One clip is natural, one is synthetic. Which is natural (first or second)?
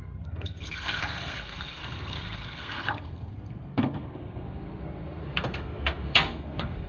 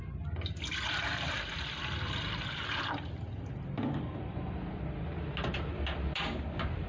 second